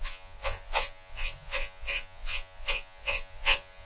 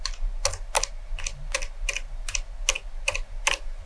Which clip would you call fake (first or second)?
first